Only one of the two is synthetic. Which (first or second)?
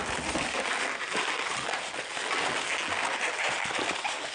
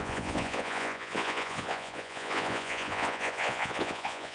second